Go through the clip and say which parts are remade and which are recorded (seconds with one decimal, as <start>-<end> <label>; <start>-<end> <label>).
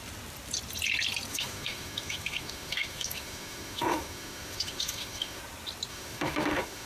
0.0-1.3 recorded; 1.3-5.4 remade; 5.4-5.9 recorded; 5.9-6.9 remade